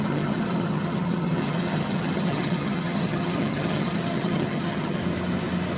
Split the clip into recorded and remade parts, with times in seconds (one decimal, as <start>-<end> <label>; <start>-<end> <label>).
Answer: 0.0-5.0 remade; 5.0-5.8 recorded